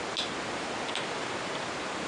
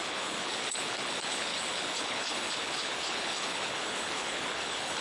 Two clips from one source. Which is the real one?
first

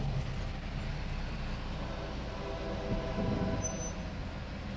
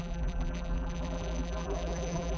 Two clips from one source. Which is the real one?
first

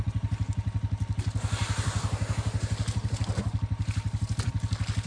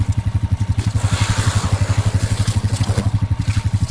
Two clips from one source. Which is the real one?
first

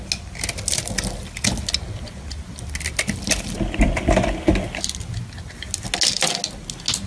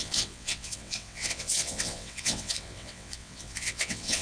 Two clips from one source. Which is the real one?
first